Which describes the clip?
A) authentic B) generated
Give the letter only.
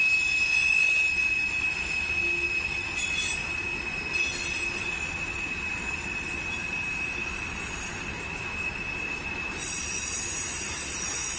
A